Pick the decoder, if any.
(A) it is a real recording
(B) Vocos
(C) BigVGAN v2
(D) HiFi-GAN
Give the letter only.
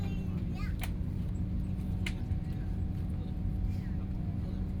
A